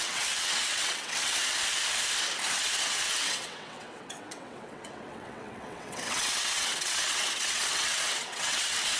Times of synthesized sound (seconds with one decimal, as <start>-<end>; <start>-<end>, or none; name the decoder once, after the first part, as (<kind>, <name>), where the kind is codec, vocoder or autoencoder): 0.0-1.4 (vocoder, WaveNeXt); 2.6-9.0